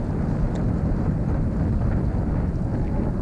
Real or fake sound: real